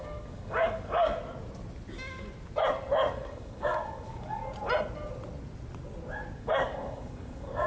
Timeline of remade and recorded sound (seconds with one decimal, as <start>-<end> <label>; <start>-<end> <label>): 0.0-1.2 remade; 1.2-3.1 recorded; 3.1-4.4 remade; 4.4-6.4 recorded; 6.4-7.7 remade